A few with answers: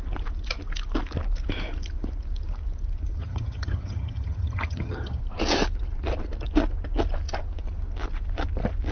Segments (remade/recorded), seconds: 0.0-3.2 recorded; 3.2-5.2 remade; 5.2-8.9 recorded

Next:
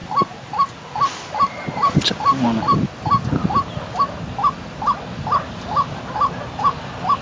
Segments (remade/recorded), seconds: 0.0-7.2 recorded

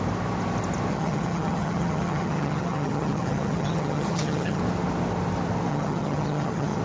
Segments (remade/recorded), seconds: 0.0-0.9 recorded; 0.9-4.6 remade; 4.6-5.7 recorded; 5.7-6.8 remade

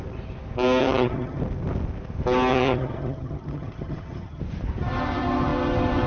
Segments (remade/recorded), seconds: 0.0-0.8 recorded; 0.8-1.4 remade; 1.4-2.5 recorded; 2.5-4.4 remade; 4.4-6.1 recorded

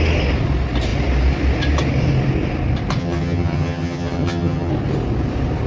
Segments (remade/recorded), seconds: 0.0-3.0 recorded; 3.0-4.7 remade; 4.7-5.7 recorded

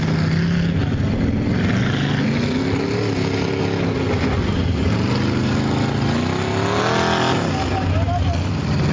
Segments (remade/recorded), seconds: 0.0-8.9 recorded